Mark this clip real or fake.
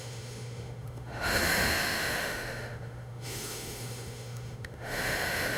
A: fake